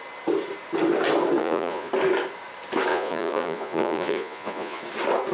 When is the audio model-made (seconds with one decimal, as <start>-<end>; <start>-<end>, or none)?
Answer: 1.4-1.9; 2.9-4.8